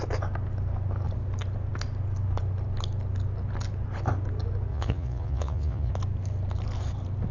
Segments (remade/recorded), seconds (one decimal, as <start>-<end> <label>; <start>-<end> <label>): 0.0-4.7 recorded; 4.7-5.9 remade; 5.9-7.3 recorded